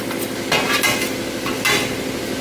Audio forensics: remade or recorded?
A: recorded